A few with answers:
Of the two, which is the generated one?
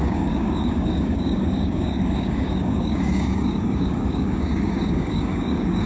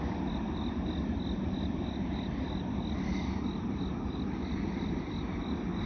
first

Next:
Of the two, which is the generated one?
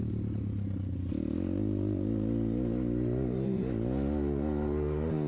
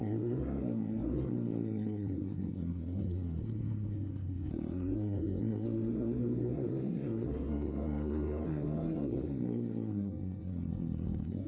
second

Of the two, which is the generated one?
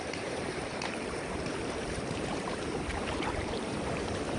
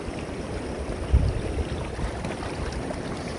first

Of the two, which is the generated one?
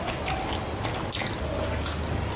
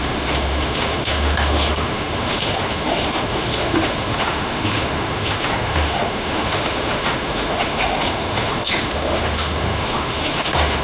second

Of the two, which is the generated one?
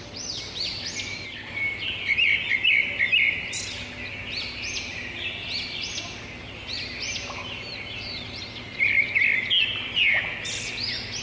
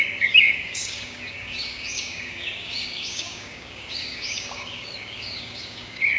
second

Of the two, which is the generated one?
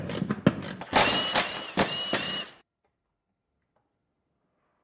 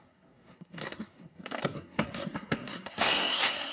second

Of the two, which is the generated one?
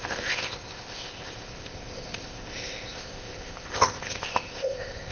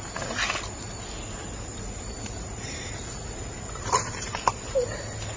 first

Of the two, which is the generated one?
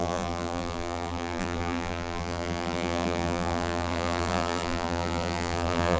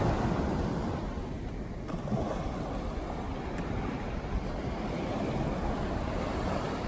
first